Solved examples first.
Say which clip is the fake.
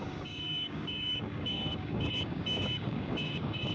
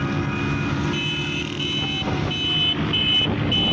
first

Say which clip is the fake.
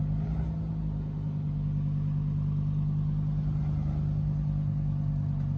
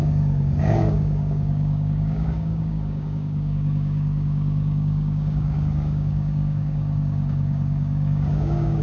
second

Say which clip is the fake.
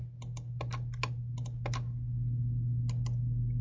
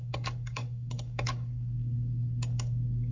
second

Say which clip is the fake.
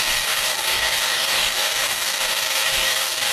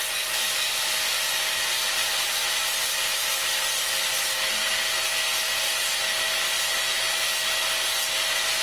first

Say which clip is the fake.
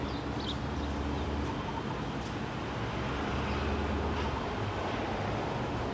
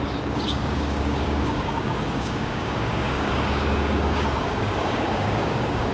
second